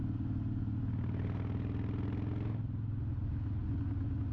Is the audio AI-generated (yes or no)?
no